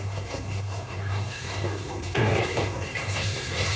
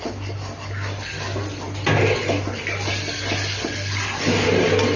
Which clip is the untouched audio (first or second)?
second